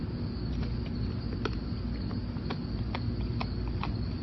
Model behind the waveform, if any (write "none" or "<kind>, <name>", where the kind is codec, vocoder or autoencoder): none